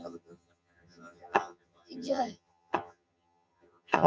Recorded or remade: remade